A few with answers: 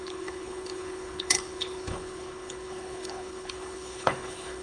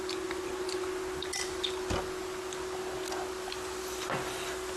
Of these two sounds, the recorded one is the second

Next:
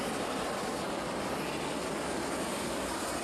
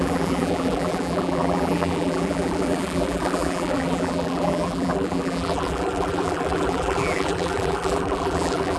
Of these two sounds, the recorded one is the first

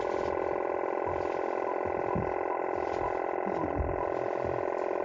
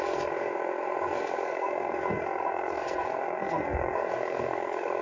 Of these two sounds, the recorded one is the first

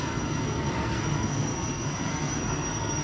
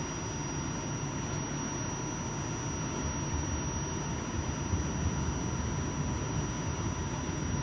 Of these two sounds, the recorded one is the second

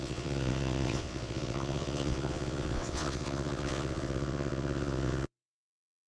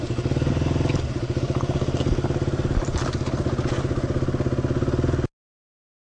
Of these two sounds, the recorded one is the second